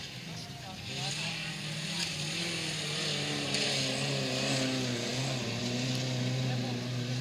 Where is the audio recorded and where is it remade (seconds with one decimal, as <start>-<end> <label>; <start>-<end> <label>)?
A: 0.0-7.2 recorded